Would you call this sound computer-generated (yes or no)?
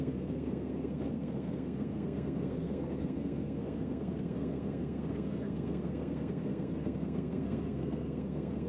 yes